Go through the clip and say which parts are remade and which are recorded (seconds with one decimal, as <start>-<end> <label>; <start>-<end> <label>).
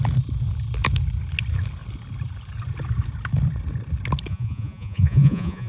0.0-4.3 recorded; 4.3-5.7 remade